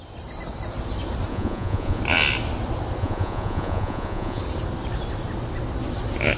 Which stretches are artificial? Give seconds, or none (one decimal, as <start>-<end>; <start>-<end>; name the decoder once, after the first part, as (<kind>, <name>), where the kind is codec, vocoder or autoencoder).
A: 1.3-2.0 (vocoder, Vocos); 3.0-4.4